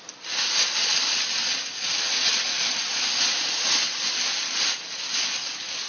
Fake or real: real